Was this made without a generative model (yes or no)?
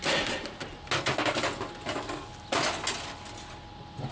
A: yes